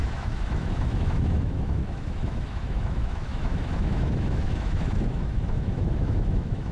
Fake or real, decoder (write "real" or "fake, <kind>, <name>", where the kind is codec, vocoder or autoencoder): fake, autoencoder, DAC-VAE